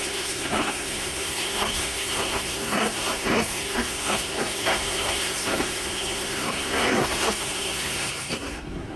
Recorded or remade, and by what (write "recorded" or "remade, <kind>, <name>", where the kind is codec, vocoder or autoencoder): remade, codec, SNAC